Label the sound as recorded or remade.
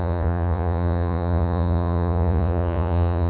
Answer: remade